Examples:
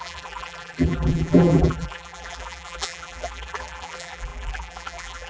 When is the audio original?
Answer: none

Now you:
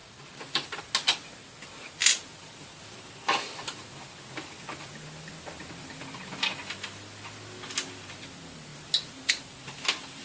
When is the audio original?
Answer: 0.8-2.0; 3.1-10.2

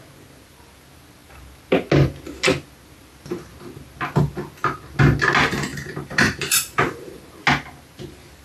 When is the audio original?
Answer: 0.0-5.7; 7.2-8.4

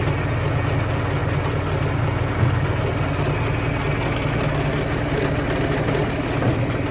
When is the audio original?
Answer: 0.0-6.9

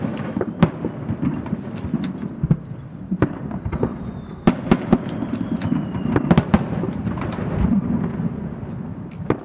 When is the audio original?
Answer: 3.9-5.2

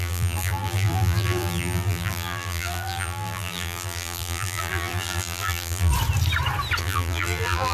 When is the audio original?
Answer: 5.9-6.8

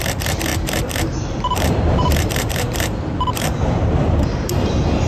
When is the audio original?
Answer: 0.0-0.5; 3.6-5.1